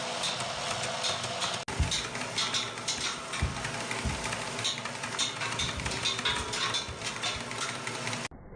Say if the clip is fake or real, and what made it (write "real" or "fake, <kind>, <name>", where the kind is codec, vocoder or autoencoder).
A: real